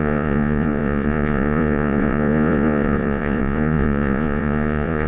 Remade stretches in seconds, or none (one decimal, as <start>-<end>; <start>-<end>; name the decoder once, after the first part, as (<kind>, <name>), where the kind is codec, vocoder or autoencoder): 0.0-5.1 (vocoder, Vocos)